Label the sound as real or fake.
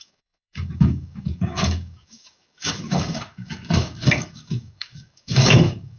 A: fake